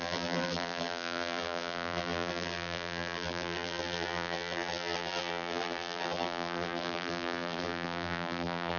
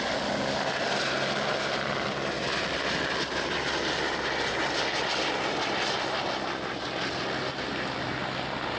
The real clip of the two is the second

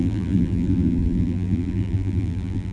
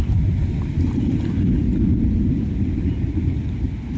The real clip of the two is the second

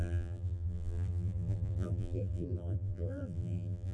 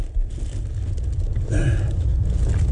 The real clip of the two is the second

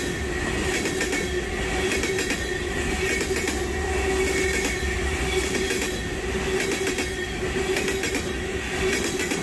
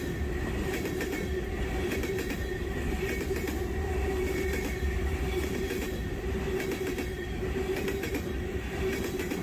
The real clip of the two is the first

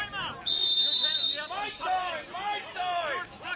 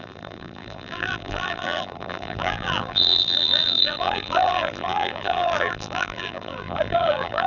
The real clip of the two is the first